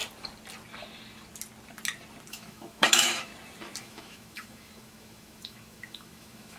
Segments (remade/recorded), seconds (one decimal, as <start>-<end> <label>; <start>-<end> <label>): 0.0-2.3 recorded; 2.3-3.3 remade; 3.3-3.8 recorded; 3.8-6.6 remade